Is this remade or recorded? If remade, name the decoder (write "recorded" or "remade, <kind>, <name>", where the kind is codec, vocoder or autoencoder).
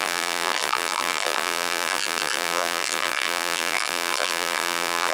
remade, vocoder, BigVGAN v2